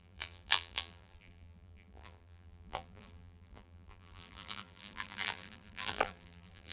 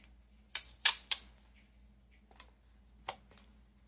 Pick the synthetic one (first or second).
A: first